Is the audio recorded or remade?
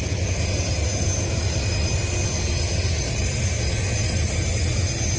recorded